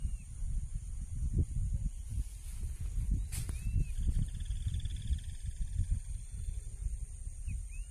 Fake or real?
real